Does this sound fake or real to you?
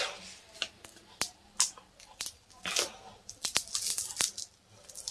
real